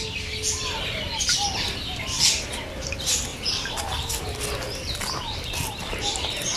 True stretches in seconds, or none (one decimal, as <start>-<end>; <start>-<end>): 0.0-6.6